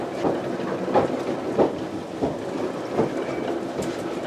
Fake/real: real